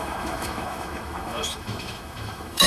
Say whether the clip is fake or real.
fake